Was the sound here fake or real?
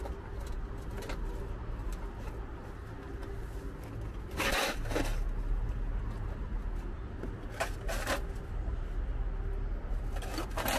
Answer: real